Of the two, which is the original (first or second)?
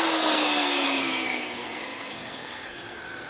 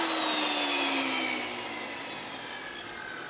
second